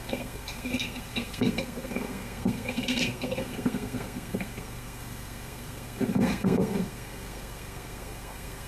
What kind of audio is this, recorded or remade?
remade